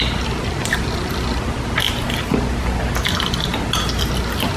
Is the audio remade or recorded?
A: recorded